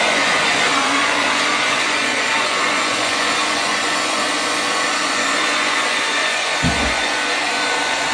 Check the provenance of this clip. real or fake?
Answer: fake